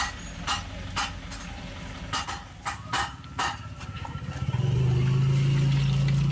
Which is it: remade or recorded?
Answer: recorded